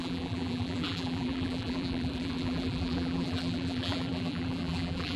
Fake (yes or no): yes